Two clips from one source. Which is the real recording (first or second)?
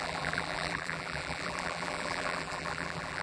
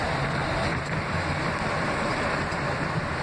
second